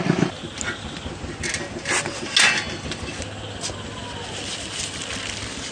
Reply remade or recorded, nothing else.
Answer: recorded